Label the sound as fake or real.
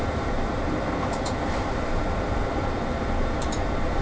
fake